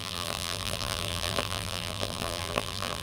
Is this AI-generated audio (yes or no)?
yes